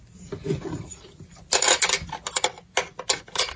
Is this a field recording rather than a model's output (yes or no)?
yes